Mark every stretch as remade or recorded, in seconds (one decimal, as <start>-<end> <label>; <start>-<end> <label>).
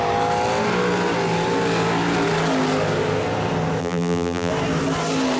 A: 0.0-3.8 recorded; 3.8-4.5 remade; 4.5-5.4 recorded